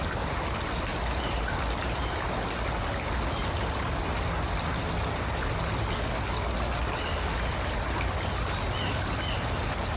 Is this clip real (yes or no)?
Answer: yes